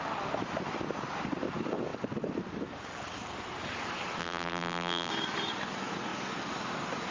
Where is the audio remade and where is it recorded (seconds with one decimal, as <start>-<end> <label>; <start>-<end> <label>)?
0.0-4.2 recorded; 4.2-5.1 remade; 5.1-7.1 recorded